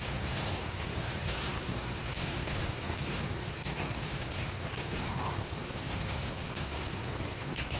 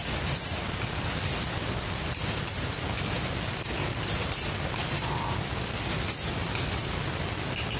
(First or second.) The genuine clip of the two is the second